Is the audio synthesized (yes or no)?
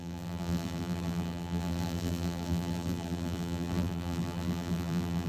yes